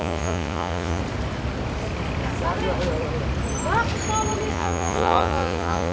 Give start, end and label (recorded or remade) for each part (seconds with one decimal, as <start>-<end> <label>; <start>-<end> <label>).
0.0-1.0 remade; 1.0-4.5 recorded; 4.5-5.9 remade